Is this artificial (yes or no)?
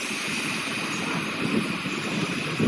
no